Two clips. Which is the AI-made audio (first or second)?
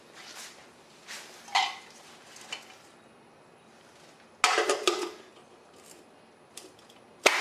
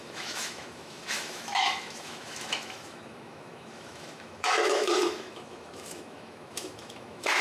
second